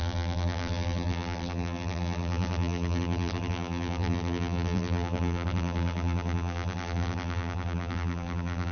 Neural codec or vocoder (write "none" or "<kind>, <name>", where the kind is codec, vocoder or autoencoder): vocoder, BigVGAN v2